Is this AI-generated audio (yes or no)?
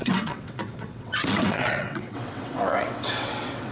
yes